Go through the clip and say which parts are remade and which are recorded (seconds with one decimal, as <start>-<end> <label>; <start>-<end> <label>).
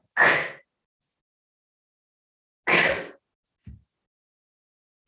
0.0-5.1 recorded